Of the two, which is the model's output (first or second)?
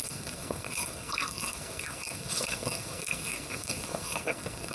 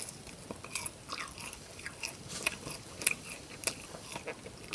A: first